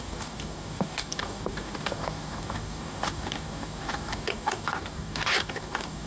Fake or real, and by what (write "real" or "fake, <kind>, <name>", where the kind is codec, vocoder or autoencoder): fake, codec, DAC